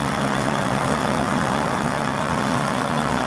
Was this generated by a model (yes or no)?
yes